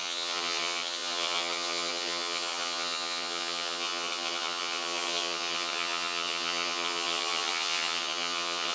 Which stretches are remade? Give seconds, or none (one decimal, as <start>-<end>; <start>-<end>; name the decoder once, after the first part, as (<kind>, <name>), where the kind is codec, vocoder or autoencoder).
0.0-8.7 (vocoder, HiFi-GAN)

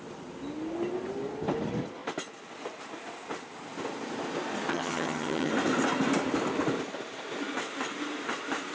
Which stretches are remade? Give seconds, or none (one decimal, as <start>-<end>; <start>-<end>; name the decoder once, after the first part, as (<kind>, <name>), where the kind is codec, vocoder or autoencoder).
4.7-5.5 (vocoder, HiFi-GAN)

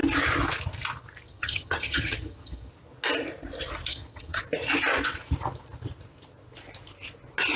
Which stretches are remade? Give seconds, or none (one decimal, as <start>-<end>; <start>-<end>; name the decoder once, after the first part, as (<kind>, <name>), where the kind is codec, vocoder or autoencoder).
1.3-2.7 (vocoder, HiFi-GAN); 3.9-4.4

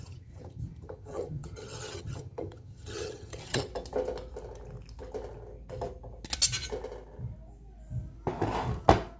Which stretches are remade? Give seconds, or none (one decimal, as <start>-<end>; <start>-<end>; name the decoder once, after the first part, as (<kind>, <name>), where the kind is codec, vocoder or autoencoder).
0.0-3.7 (vocoder, HiFi-GAN)